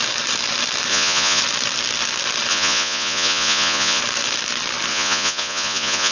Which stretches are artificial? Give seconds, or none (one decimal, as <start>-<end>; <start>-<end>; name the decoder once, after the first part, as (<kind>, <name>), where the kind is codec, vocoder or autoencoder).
0.9-1.4 (vocoder, Vocos); 2.5-4.0; 4.9-6.1